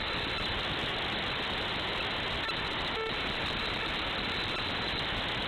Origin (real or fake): real